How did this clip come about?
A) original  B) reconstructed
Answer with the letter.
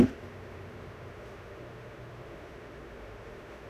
B